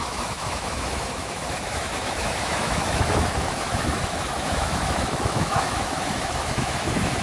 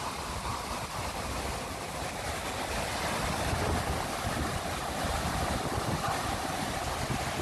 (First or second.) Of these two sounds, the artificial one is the first